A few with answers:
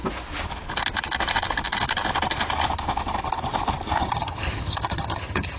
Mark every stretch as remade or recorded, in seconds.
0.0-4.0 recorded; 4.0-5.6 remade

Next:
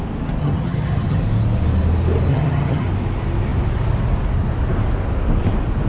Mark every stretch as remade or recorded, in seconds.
0.0-0.4 recorded; 0.4-1.2 remade; 1.2-2.3 recorded; 2.3-2.9 remade; 2.9-5.9 recorded

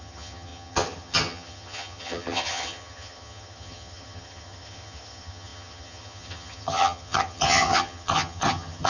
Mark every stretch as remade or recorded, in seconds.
0.0-8.9 remade

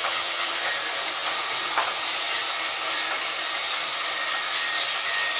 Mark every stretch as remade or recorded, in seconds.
0.0-0.7 remade; 0.7-5.4 recorded

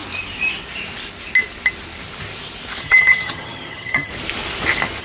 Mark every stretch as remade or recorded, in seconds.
0.0-2.8 recorded; 2.8-4.1 remade; 4.1-5.0 recorded

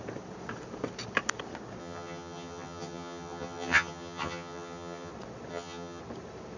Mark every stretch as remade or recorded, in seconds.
0.0-1.8 recorded; 1.8-5.1 remade; 5.1-5.5 recorded; 5.5-6.0 remade; 6.0-6.6 recorded